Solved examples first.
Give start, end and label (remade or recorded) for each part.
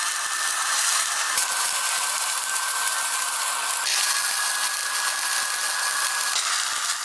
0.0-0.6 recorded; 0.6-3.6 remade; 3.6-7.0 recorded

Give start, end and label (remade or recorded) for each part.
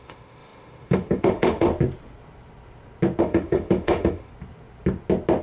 0.0-1.7 remade; 1.7-3.2 recorded; 3.2-4.3 remade; 4.3-5.4 recorded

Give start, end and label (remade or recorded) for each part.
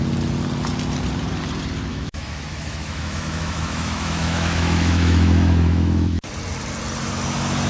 0.0-1.9 recorded; 1.9-6.3 remade; 6.3-7.7 recorded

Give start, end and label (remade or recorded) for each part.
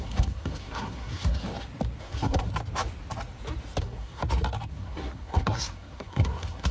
0.0-1.5 remade; 1.5-2.0 recorded; 2.0-2.5 remade; 2.5-3.8 recorded; 3.8-4.2 remade; 4.2-4.7 recorded; 4.7-6.7 remade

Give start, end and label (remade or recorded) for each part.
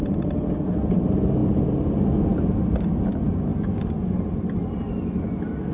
0.0-5.7 recorded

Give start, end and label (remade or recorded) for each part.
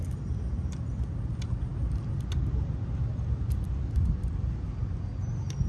0.0-5.7 recorded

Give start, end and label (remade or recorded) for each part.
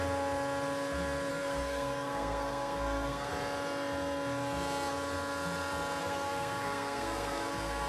0.0-1.3 recorded; 1.3-3.3 remade; 3.3-6.0 recorded; 6.0-7.9 remade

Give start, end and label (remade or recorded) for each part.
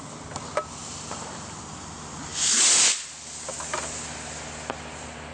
0.0-0.8 recorded; 0.8-1.7 remade; 1.7-5.3 recorded